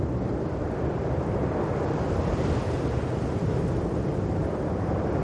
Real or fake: real